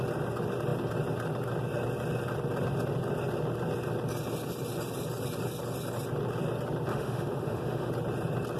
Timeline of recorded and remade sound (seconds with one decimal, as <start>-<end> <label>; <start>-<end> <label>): 0.0-6.9 recorded; 6.9-7.9 remade; 7.9-8.6 recorded